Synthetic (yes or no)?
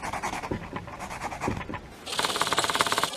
no